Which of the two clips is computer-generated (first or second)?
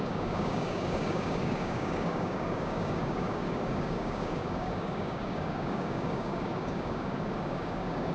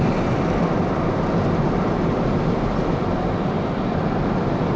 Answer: first